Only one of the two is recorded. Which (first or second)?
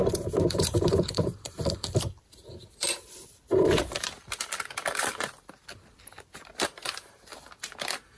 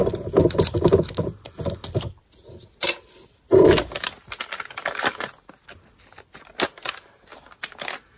second